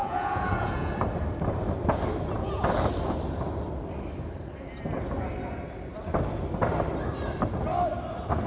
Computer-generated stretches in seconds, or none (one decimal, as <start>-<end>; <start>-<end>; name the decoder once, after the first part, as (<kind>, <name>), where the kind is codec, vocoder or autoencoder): 0.0-0.9 (vocoder, Vocos)